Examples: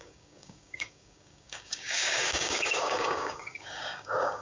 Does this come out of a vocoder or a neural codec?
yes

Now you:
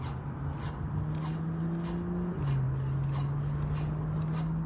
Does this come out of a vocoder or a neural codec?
no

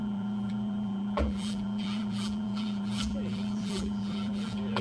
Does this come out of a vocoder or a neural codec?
yes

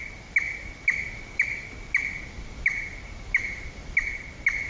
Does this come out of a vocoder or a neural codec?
no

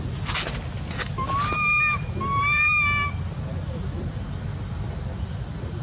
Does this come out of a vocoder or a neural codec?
no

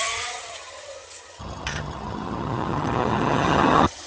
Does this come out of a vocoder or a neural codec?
yes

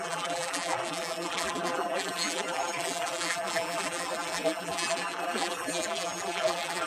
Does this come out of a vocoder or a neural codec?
yes